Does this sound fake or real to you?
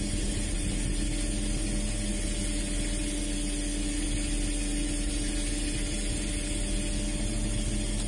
real